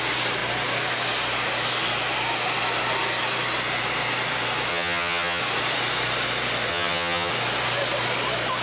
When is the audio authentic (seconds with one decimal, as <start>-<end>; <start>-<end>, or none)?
0.0-4.7; 5.4-6.7; 7.3-8.6